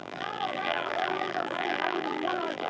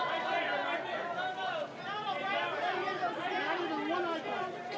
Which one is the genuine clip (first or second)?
second